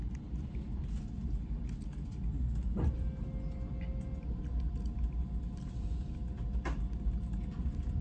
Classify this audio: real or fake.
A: real